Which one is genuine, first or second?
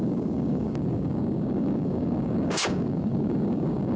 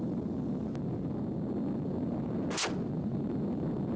second